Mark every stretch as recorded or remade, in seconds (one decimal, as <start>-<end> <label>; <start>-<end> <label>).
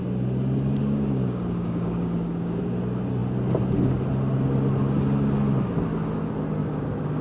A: 0.0-0.8 recorded; 0.8-2.6 remade; 2.6-6.6 recorded; 6.6-7.2 remade